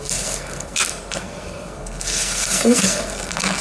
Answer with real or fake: fake